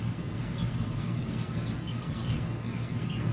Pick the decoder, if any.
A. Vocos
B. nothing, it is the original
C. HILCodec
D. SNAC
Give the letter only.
D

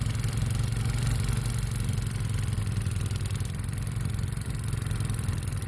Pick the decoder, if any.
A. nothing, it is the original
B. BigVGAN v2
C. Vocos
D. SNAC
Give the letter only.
A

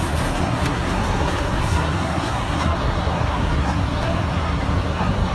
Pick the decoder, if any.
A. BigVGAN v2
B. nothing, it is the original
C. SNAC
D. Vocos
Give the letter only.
C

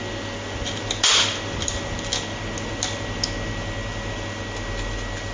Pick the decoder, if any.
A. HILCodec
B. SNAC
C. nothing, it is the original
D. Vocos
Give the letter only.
C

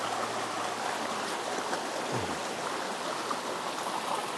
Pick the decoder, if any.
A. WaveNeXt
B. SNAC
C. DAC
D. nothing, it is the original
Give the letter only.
D